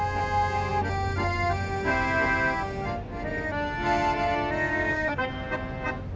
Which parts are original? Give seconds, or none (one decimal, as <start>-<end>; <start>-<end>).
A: 0.0-4.7; 5.3-6.2

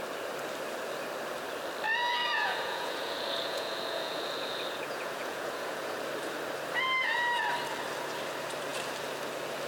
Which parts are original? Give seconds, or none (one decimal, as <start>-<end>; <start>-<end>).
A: 0.0-2.2; 5.9-9.7

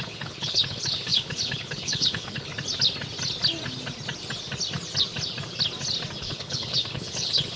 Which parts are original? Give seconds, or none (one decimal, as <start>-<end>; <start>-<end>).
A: 2.5-6.2

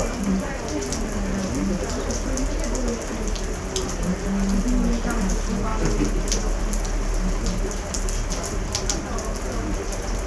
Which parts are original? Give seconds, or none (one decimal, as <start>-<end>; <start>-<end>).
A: 0.0-10.3

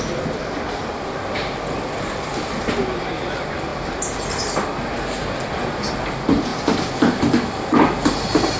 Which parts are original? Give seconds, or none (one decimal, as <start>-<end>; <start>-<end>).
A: 0.0-8.6

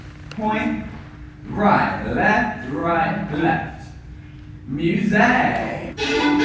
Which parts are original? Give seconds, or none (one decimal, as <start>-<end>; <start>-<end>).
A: 0.0-2.8; 3.7-5.6